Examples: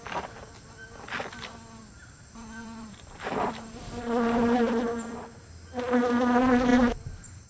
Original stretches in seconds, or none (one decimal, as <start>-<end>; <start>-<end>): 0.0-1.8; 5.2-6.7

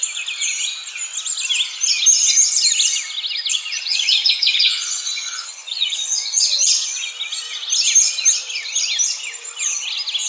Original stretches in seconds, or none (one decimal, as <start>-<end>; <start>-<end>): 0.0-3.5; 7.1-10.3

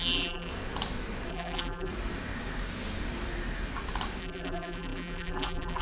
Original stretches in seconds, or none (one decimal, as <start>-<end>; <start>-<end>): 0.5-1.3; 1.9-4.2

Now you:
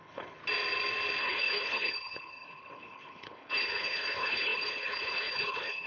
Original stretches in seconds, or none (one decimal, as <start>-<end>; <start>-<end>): 0.4-1.2

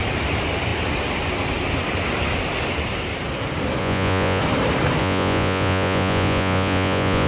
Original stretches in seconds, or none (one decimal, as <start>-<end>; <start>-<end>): 0.0-3.8; 4.4-5.0

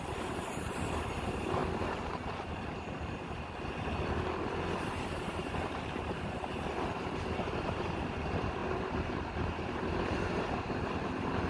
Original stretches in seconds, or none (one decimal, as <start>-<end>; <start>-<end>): 1.6-4.8; 8.6-9.7

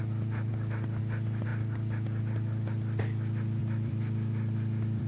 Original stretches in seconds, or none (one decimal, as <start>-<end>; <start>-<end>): 0.0-3.6